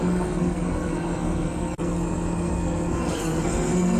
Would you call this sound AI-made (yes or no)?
yes